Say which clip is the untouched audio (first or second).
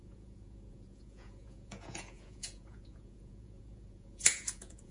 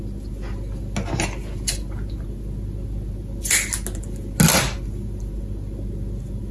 second